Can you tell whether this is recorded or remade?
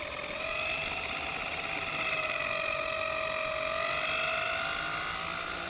recorded